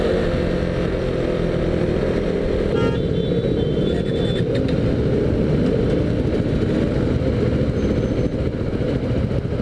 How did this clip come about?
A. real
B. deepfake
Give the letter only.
A